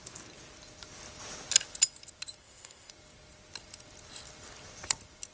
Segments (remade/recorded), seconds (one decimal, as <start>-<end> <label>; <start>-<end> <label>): 0.0-2.4 recorded; 2.4-2.9 remade; 2.9-5.3 recorded